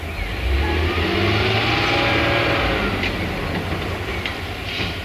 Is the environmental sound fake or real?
real